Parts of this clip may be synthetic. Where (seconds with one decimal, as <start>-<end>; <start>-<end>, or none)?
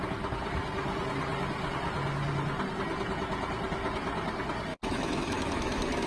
4.7-6.1